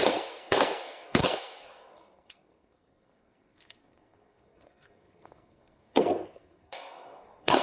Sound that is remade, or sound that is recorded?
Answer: remade